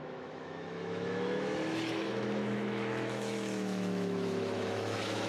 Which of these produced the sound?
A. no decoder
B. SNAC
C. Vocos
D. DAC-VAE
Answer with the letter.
D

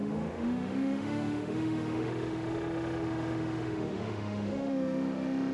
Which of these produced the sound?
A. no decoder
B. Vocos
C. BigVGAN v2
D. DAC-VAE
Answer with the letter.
D